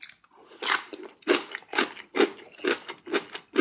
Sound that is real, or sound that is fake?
real